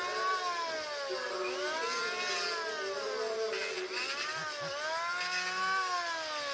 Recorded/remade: recorded